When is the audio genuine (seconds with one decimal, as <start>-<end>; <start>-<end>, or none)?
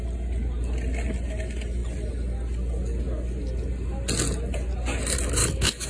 0.0-5.4